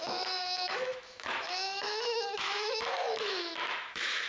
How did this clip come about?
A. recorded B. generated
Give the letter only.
B